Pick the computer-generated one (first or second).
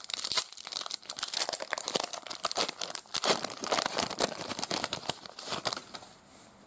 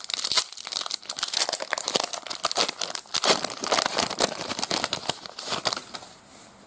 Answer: first